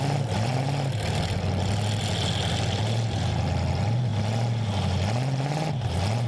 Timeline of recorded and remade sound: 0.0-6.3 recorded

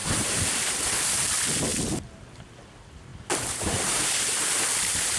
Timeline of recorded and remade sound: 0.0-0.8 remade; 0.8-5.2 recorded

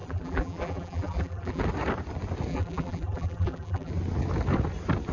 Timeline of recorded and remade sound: 0.0-1.6 remade; 1.6-2.5 recorded; 2.5-3.9 remade; 3.9-5.1 recorded